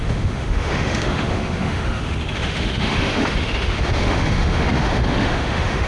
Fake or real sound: fake